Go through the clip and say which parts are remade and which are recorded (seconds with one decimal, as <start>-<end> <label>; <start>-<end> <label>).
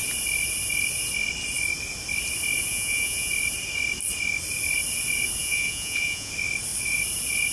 0.0-2.7 recorded; 2.7-3.3 remade; 3.3-5.4 recorded; 5.4-6.3 remade; 6.3-7.5 recorded